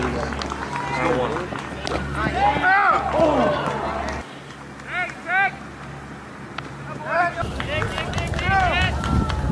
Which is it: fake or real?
real